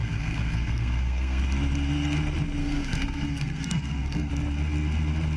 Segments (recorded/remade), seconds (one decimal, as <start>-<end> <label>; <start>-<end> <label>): 0.0-1.4 remade; 1.4-2.6 recorded; 2.6-4.3 remade; 4.3-5.4 recorded